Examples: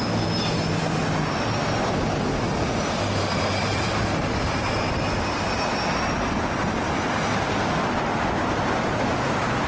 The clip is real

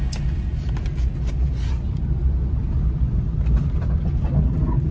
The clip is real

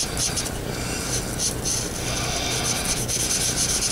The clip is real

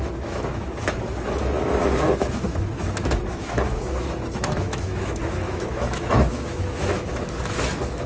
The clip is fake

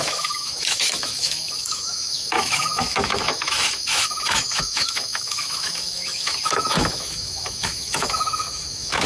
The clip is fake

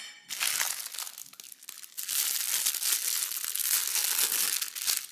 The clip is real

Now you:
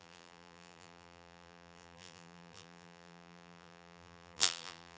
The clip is fake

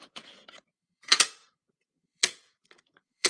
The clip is fake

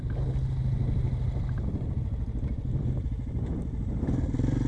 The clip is real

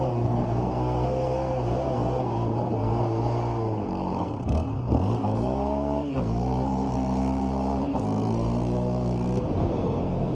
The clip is fake